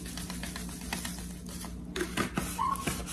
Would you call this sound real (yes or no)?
yes